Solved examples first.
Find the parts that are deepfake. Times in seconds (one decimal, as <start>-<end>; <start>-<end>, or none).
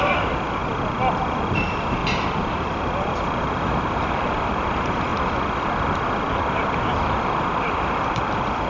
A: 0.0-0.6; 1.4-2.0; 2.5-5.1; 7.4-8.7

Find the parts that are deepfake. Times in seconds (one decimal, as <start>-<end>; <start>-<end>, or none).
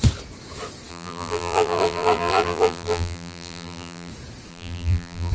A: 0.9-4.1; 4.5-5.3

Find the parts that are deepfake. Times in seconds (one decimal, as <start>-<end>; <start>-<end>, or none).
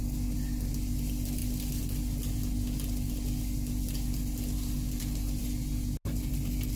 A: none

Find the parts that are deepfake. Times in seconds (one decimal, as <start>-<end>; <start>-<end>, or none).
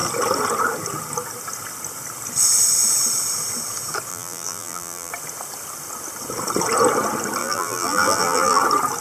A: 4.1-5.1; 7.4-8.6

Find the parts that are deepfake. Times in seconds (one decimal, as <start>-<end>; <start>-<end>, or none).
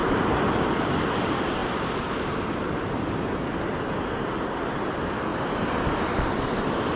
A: 1.6-3.0; 5.3-5.9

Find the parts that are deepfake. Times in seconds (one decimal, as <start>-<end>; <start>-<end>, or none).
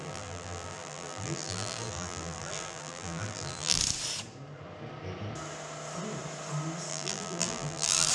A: 0.0-3.8; 6.9-8.1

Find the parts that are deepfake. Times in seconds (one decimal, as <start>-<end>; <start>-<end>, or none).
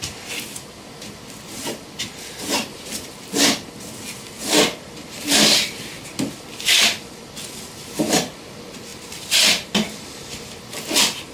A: none